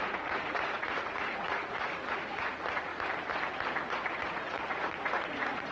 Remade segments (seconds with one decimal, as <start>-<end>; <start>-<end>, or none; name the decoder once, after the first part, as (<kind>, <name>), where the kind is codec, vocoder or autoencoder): 0.0-2.9 (vocoder, Vocos); 3.9-5.7